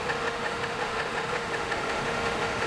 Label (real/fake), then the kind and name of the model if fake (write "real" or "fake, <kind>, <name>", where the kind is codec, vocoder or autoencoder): fake, autoencoder, DAC-VAE